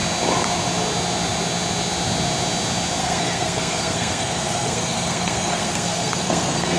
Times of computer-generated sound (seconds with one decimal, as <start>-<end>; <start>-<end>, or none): 3.0-6.8